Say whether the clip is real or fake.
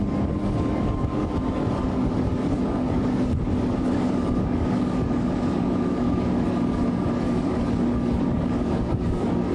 fake